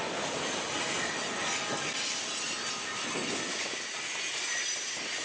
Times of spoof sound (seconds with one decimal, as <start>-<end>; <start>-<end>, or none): none